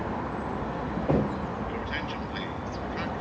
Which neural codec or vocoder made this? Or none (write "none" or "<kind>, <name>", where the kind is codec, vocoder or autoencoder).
none